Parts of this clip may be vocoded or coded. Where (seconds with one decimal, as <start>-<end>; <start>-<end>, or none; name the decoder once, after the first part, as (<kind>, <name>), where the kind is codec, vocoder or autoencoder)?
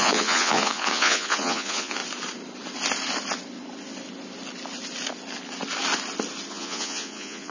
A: 0.0-2.0 (vocoder, Vocos); 6.5-7.5